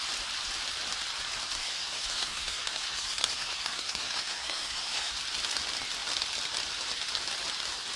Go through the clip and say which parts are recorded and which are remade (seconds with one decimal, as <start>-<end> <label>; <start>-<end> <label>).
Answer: 0.0-1.6 recorded; 1.6-5.1 remade; 5.1-8.0 recorded